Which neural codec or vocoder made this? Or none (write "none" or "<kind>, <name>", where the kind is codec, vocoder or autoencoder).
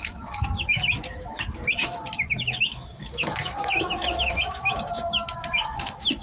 autoencoder, DAC-VAE